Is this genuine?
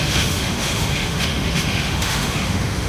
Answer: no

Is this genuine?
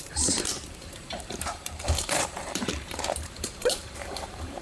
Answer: no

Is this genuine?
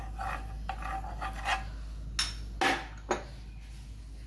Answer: yes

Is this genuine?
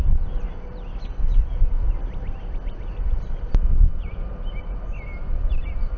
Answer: yes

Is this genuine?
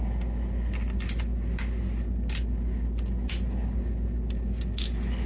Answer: yes